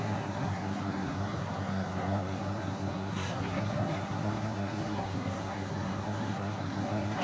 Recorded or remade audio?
remade